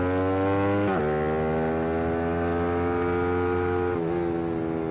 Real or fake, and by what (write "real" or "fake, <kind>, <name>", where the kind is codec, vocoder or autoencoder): real